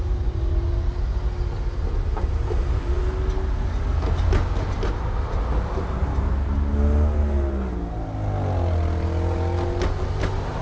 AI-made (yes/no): no